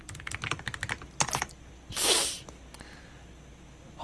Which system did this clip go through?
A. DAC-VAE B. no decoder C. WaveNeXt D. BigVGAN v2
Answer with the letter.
B